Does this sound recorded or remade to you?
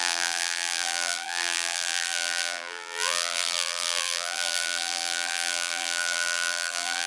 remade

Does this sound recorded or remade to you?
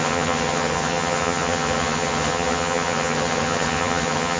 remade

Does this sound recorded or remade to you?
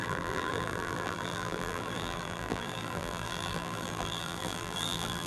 remade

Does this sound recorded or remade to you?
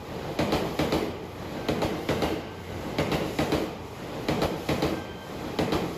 recorded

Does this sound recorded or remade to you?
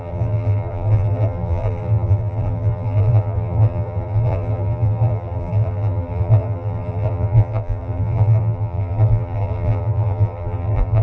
remade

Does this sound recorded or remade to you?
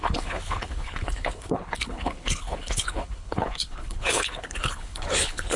remade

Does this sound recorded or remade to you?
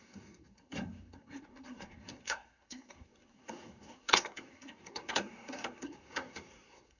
remade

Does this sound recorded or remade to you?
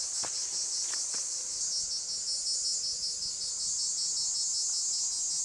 recorded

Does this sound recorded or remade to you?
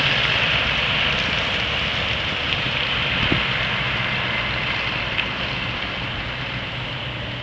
remade